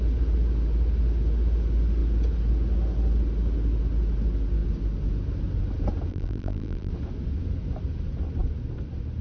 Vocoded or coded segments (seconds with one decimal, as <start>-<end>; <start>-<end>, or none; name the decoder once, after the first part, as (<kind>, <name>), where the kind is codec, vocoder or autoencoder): 6.1-6.9 (vocoder, BigVGAN v2)